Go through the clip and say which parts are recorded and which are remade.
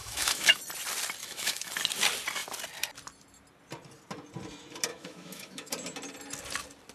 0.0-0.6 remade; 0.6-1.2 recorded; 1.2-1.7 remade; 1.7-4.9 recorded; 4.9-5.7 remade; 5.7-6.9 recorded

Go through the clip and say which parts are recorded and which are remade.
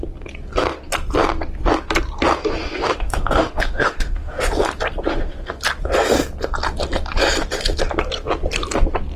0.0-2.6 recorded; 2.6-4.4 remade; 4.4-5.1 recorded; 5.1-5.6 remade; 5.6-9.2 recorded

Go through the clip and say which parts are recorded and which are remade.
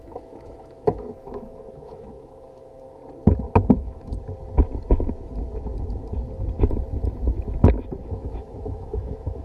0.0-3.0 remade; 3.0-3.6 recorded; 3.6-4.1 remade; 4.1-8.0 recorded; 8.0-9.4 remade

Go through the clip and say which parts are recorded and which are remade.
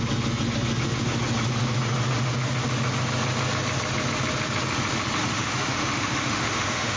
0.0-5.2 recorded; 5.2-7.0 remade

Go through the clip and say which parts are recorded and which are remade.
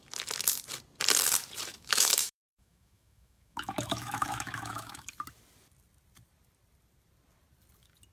0.0-1.7 recorded; 1.7-5.1 remade; 5.1-8.1 recorded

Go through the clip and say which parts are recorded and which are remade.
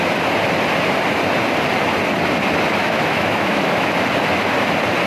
0.0-2.8 recorded; 2.8-3.9 remade; 3.9-5.1 recorded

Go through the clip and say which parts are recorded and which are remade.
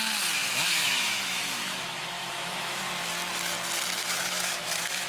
0.0-0.4 recorded; 0.4-2.8 remade; 2.8-4.0 recorded; 4.0-5.1 remade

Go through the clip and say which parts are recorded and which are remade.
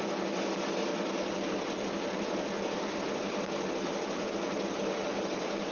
0.0-5.7 recorded